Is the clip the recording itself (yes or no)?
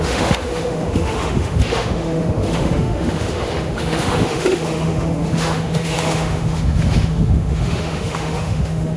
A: no